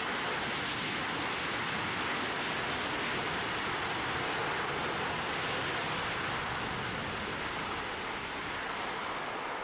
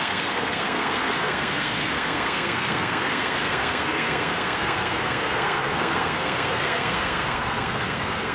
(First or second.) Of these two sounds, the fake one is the second